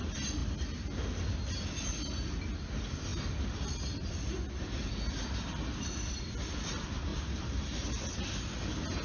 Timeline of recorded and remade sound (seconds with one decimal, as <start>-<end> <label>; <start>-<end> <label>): 0.0-7.1 recorded; 7.1-7.9 remade; 7.9-9.0 recorded